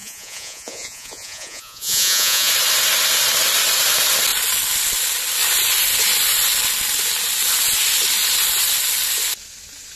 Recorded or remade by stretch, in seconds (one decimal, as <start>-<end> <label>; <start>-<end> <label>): 0.0-2.5 remade; 2.5-10.0 recorded